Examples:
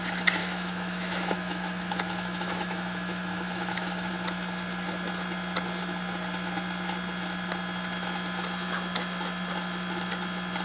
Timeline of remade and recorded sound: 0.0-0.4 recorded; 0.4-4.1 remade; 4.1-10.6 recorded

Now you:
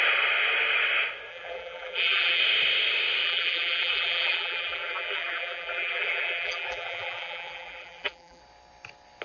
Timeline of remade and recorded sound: 0.0-1.3 recorded; 1.3-2.4 remade; 2.4-3.2 recorded; 3.2-8.4 remade; 8.4-9.2 recorded

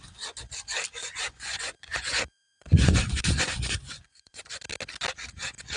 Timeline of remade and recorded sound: 0.0-1.0 recorded; 1.0-4.5 remade; 4.5-5.8 recorded

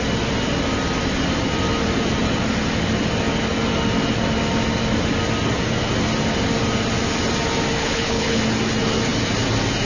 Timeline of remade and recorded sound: 0.0-7.8 recorded; 7.8-8.4 remade; 8.4-9.8 recorded

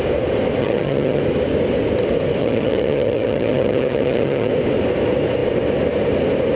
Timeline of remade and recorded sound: 0.0-0.6 recorded; 0.6-1.2 remade; 1.2-2.4 recorded; 2.4-4.5 remade; 4.5-6.6 recorded

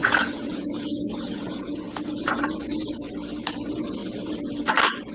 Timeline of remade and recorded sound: 0.0-2.4 remade; 2.4-5.1 recorded